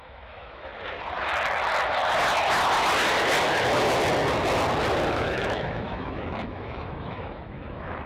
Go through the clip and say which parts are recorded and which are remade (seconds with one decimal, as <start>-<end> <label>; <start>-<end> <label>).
0.0-0.7 remade; 0.7-5.1 recorded; 5.1-8.1 remade

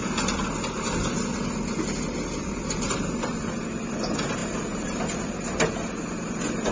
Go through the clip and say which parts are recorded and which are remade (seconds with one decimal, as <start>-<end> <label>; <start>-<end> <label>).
0.0-6.7 recorded